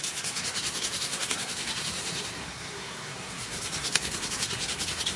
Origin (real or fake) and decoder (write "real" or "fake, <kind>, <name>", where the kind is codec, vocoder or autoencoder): fake, codec, SNAC